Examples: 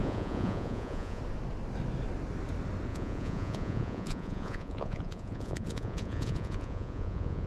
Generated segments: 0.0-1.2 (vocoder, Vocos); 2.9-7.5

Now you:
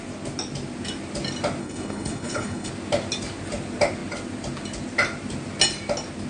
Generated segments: 1.6-2.7 (codec, HILCodec)